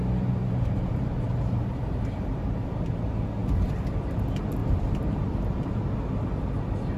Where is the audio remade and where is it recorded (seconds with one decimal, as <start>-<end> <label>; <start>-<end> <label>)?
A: 0.0-0.4 recorded; 0.4-2.8 remade; 2.8-4.6 recorded; 4.6-5.7 remade; 5.7-7.0 recorded